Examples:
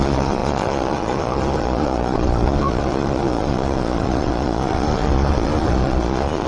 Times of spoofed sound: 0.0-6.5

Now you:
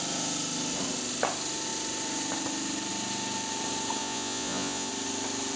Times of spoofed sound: 4.0-4.9